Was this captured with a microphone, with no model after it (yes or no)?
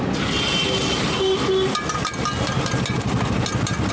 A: yes